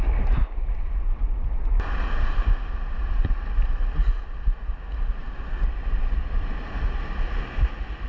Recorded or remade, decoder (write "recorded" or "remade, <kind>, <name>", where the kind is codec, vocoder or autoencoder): recorded